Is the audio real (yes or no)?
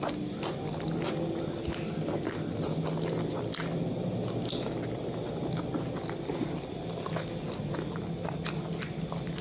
yes